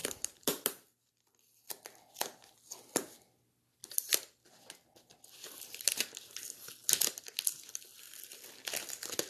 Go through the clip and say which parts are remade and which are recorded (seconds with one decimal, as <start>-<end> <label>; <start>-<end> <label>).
0.0-1.6 remade; 1.6-3.8 recorded; 3.8-6.7 remade; 6.7-7.9 recorded; 7.9-8.5 remade; 8.5-9.3 recorded